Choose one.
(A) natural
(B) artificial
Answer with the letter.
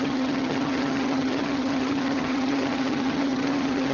B